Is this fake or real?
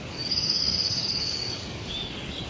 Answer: fake